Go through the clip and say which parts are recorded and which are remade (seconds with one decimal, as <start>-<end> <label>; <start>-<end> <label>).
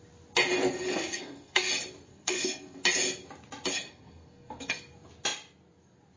0.0-1.1 recorded; 1.1-1.7 remade; 1.7-2.1 recorded; 2.1-2.8 remade; 2.8-3.9 recorded; 3.9-4.8 remade; 4.8-6.2 recorded